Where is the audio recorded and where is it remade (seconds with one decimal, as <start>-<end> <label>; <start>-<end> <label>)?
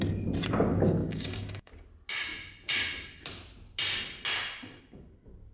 0.0-1.0 recorded; 1.0-1.7 remade; 1.7-5.5 recorded